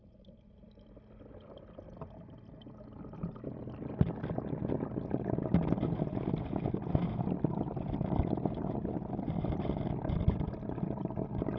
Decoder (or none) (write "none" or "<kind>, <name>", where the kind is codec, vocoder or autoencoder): none